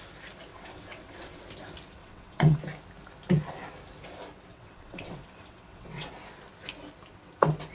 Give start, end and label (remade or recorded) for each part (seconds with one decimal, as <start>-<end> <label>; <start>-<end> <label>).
0.0-0.5 recorded; 0.5-1.4 remade; 1.4-2.0 recorded; 2.0-2.6 remade; 2.6-4.5 recorded; 4.5-6.1 remade; 6.1-7.7 recorded

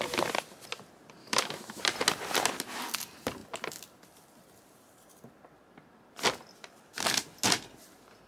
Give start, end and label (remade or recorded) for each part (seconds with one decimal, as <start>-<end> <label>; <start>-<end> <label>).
0.0-1.2 recorded; 1.2-1.8 remade; 1.8-8.3 recorded

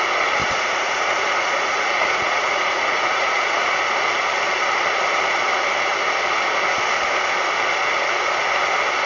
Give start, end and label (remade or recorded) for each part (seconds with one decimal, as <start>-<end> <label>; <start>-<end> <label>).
0.0-0.4 recorded; 0.4-3.8 remade; 3.8-9.1 recorded